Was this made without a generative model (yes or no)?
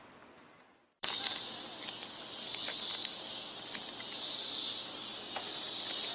no